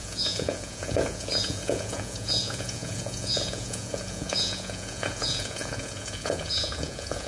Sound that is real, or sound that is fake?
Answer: fake